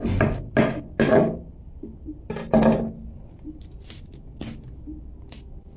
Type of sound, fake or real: real